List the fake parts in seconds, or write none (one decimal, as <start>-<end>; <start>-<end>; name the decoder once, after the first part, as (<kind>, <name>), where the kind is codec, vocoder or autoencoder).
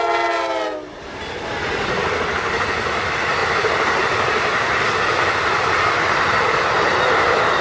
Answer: 3.4-7.0 (vocoder, BigVGAN v2)